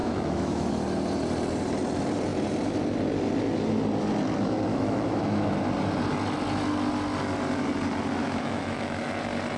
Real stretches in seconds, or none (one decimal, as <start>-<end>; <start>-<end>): 0.7-4.7; 5.5-8.2; 9.0-9.6